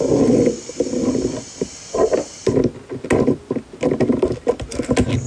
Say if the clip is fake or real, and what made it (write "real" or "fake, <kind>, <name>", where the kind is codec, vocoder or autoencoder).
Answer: real